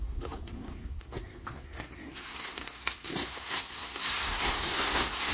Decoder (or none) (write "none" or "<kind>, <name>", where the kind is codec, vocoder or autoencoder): codec, SNAC